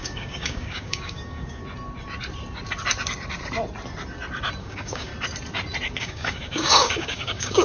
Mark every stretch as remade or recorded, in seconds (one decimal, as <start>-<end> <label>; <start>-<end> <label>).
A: 0.0-1.6 remade; 1.6-4.6 recorded; 4.6-5.1 remade; 5.1-6.0 recorded; 6.0-7.6 remade